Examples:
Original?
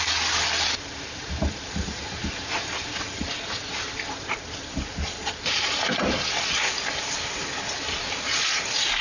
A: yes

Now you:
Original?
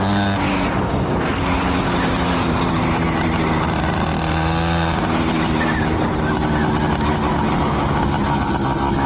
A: yes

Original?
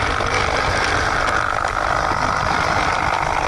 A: yes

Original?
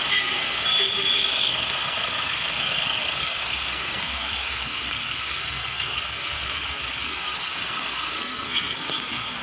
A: no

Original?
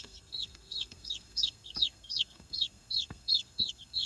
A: no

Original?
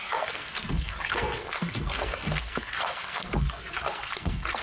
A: no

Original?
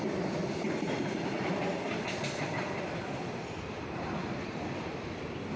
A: yes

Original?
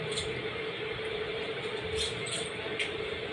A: yes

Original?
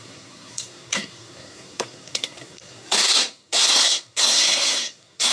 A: no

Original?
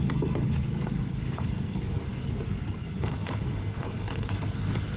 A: no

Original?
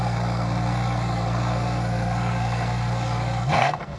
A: no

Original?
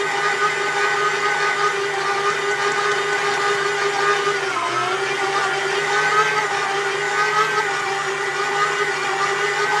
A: yes